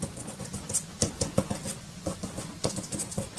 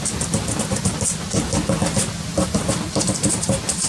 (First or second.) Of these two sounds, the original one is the second